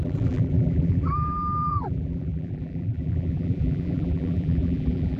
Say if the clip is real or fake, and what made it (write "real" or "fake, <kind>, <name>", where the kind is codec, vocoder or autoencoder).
fake, vocoder, BigVGAN v2